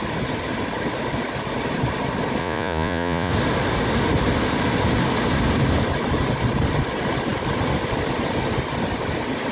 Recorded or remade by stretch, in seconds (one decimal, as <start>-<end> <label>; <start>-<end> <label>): 0.0-2.4 recorded; 2.4-3.3 remade; 3.3-9.5 recorded